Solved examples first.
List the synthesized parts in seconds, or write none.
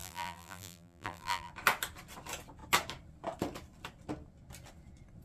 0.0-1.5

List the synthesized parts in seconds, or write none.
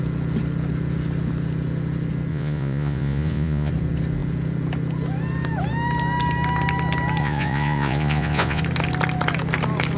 2.3-3.7; 7.2-8.6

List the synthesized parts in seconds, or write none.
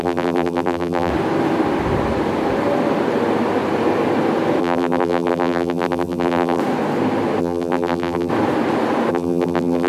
0.0-1.1; 4.6-6.6; 7.4-8.3; 9.1-9.9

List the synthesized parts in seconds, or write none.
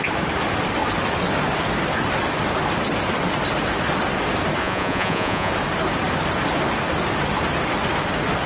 4.6-5.5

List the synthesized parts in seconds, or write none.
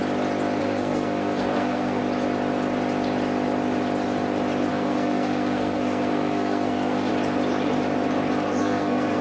0.6-2.0; 4.7-7.1; 8.6-9.2